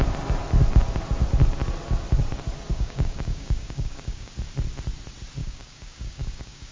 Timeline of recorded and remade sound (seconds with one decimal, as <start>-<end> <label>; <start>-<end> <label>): 0.0-2.7 recorded; 2.7-4.3 remade; 4.3-5.4 recorded; 5.4-6.7 remade